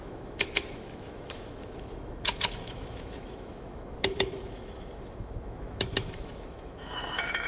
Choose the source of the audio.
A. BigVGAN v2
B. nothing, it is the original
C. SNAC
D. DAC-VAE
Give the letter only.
D